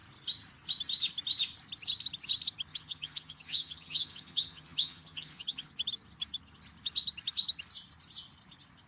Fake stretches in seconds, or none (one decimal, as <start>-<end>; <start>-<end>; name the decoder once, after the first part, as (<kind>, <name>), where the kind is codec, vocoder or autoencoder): 2.7-5.7 (vocoder, HiFi-GAN)